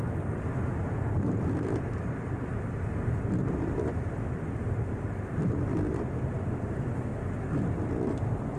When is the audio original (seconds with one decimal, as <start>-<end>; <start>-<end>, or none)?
7.1-7.8